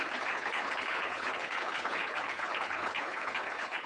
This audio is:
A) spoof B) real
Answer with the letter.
A